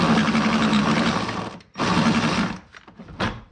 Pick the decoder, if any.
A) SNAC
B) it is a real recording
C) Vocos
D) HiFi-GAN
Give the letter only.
B